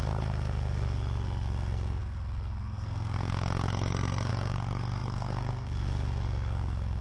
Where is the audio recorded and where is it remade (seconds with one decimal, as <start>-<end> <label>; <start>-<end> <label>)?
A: 0.0-7.0 remade